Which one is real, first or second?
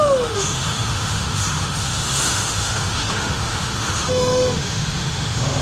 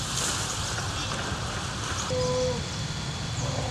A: second